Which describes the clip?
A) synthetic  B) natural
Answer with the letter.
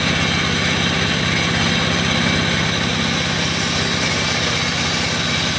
B